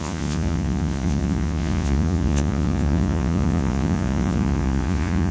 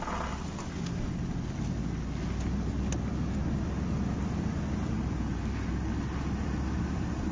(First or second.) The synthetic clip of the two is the first